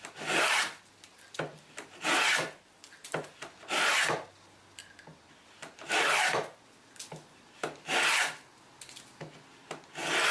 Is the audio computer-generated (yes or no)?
no